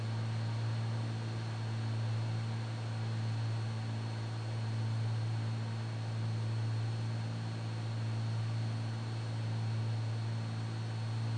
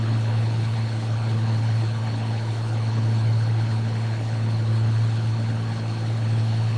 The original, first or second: first